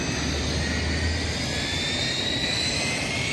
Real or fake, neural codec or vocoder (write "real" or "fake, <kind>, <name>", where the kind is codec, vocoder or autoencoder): real